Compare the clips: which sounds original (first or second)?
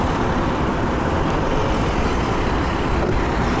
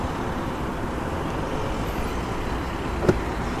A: second